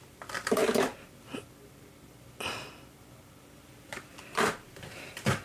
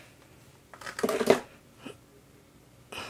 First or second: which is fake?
first